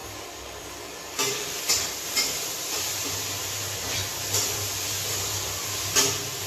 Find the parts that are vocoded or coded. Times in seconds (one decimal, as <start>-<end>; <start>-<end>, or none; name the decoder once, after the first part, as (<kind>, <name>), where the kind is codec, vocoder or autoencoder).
0.0-1.5 (codec, DAC)

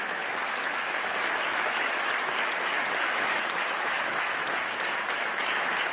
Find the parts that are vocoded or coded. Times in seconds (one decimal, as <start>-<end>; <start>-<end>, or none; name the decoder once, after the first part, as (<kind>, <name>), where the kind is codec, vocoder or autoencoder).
0.0-4.4 (autoencoder, DAC-VAE); 5.1-5.9